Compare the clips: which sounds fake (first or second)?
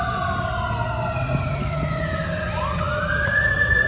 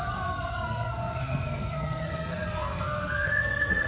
second